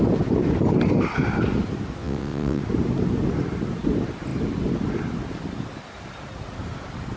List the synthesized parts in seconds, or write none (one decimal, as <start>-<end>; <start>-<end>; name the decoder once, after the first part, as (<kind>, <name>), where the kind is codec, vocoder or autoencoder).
2.0-2.6 (vocoder, WaveNeXt)